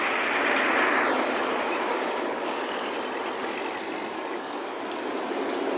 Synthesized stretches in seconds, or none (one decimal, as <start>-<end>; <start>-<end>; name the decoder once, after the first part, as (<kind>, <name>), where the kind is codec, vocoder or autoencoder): 1.9-2.8 (codec, DAC); 4.1-4.8